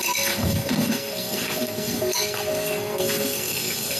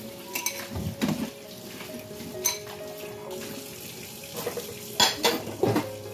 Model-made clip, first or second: first